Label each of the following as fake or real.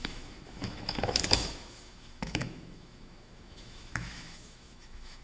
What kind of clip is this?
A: fake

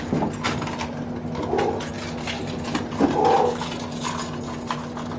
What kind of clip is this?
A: real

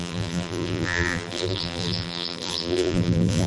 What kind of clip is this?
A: fake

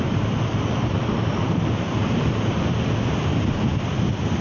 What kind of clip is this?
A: fake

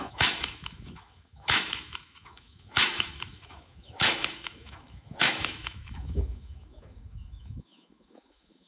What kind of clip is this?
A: fake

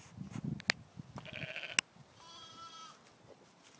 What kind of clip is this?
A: real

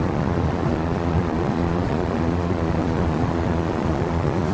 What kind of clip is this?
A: fake